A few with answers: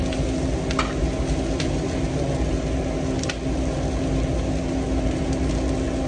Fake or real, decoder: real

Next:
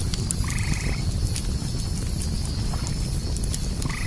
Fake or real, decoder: real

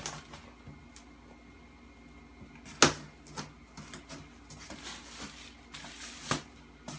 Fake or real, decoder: real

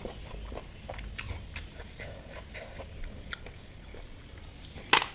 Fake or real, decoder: real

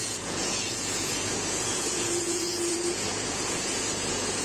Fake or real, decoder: fake, vocoder, Vocos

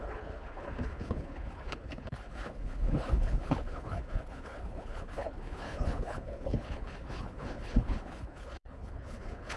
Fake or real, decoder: fake, codec, HILCodec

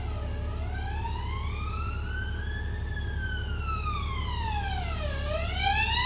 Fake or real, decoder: real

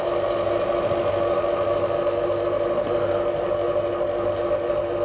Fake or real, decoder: real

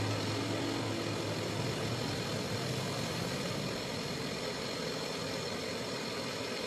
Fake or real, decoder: real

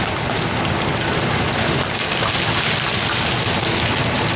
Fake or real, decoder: real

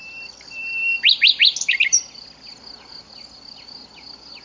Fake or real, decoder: real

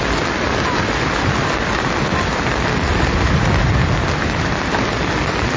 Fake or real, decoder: real